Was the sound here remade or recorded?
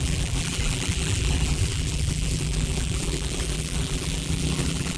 remade